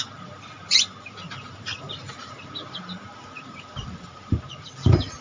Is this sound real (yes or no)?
no